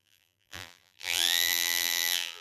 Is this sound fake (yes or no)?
yes